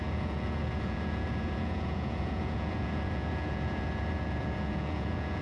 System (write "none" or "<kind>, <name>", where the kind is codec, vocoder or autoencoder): vocoder, Vocos